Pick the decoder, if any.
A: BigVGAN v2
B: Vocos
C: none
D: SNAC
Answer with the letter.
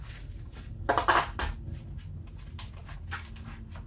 C